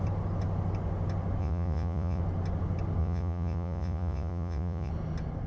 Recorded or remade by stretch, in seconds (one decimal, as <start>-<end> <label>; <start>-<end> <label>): 0.0-1.4 recorded; 1.4-2.2 remade; 2.2-3.0 recorded; 3.0-4.9 remade; 4.9-5.5 recorded